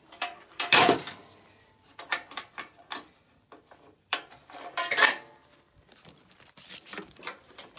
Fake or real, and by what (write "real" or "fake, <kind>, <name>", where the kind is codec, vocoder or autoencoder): fake, vocoder, BigVGAN v2